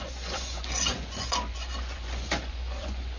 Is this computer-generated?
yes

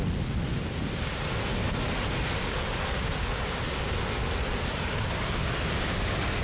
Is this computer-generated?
no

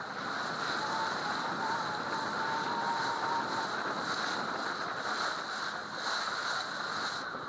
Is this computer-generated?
no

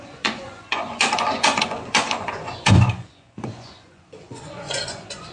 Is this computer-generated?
yes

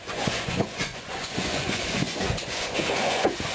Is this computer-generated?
yes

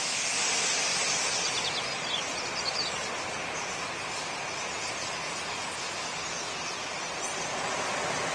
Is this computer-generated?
no